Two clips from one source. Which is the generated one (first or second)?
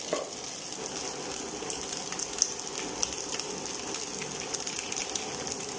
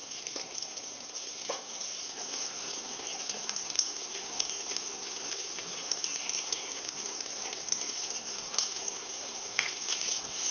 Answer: second